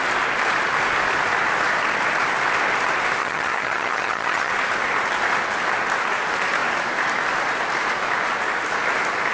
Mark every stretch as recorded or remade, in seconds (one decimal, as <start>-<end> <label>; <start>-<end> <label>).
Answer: 0.0-3.2 recorded; 3.2-4.5 remade; 4.5-9.3 recorded